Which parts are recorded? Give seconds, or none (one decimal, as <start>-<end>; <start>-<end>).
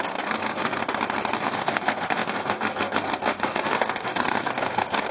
0.8-1.4